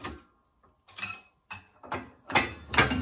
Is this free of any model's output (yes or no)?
yes